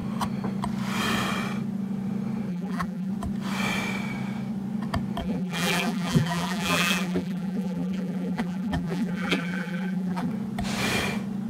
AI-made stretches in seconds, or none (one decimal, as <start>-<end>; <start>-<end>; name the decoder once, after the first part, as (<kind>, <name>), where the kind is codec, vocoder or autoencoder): 2.5-3.1 (vocoder, BigVGAN v2); 5.2-10.3